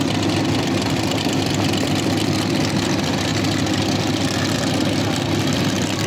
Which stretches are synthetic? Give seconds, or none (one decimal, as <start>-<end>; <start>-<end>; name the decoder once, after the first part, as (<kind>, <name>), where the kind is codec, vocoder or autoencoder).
none